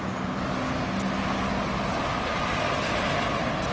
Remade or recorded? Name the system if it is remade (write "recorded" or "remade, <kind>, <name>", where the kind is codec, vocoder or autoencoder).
recorded